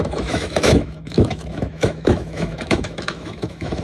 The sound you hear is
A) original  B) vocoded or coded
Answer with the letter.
B